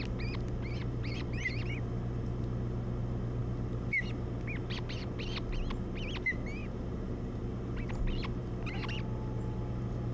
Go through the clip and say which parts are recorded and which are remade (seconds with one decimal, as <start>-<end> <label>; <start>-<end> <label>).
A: 0.0-0.8 recorded; 0.8-1.6 remade; 1.6-6.6 recorded; 6.6-7.4 remade; 7.4-10.1 recorded